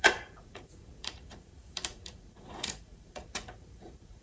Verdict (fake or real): fake